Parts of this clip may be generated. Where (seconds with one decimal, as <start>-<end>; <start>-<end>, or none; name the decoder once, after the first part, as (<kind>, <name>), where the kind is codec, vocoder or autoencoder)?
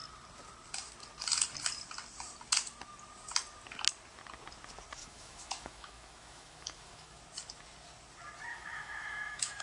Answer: 5.0-7.2 (autoencoder, DAC-VAE); 8.5-9.6